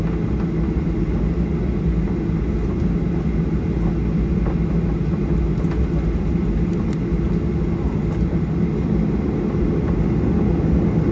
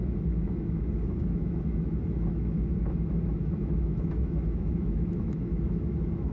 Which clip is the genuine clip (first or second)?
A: first